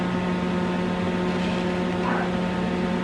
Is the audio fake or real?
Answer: real